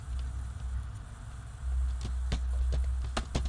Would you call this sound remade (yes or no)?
no